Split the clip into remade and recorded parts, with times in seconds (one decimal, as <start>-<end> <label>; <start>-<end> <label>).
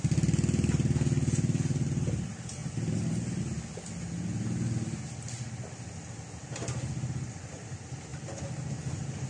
0.0-9.3 recorded